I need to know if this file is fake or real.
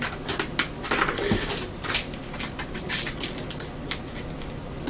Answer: real